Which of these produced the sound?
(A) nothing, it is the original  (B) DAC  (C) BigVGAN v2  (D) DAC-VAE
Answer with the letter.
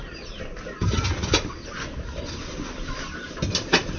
A